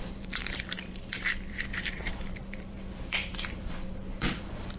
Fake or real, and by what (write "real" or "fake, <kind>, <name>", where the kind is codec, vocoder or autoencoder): fake, vocoder, BigVGAN v2